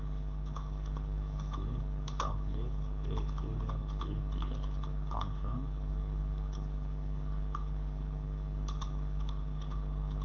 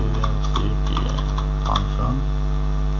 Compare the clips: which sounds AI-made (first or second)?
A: first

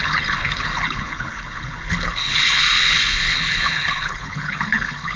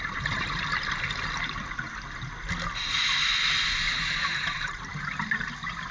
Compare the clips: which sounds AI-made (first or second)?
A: first